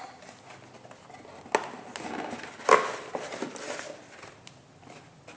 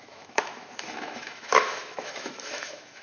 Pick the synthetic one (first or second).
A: second